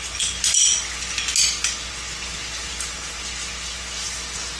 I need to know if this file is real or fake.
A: real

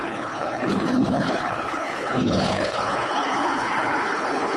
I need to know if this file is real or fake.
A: fake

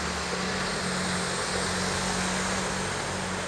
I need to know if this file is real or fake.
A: real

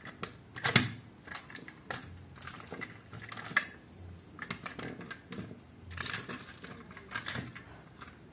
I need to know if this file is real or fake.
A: real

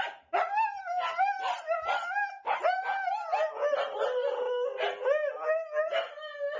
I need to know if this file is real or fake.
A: real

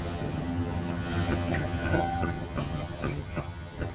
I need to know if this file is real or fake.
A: fake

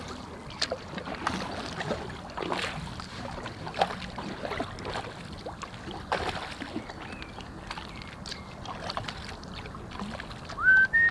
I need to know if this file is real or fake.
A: real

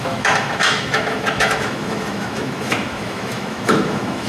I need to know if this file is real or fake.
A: fake